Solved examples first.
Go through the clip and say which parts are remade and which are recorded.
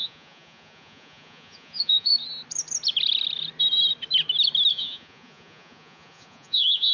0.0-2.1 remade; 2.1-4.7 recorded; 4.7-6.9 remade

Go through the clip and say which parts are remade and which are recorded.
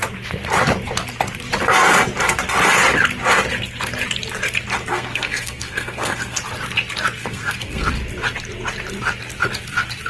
0.0-4.9 recorded; 4.9-6.4 remade; 6.4-7.2 recorded; 7.2-7.9 remade; 7.9-10.1 recorded